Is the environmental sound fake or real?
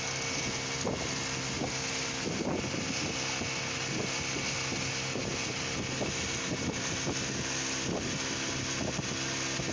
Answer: real